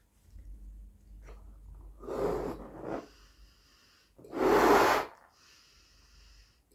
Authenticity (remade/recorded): recorded